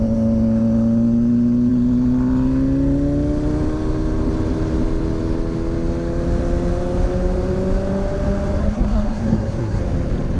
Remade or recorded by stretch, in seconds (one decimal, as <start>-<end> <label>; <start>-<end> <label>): 0.0-8.6 recorded; 8.6-9.8 remade; 9.8-10.4 recorded